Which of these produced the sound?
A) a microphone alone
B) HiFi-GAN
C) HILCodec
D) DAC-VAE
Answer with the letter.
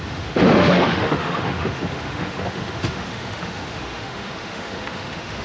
D